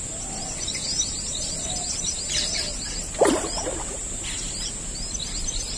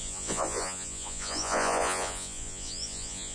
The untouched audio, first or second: first